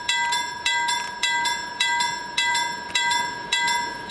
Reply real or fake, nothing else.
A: fake